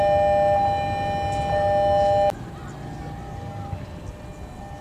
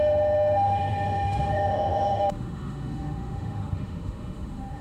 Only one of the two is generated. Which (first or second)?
second